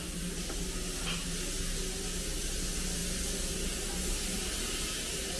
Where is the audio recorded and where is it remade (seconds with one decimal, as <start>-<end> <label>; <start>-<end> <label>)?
0.0-5.4 recorded